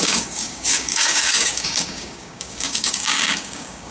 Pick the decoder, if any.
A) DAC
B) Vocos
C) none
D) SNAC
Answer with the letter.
A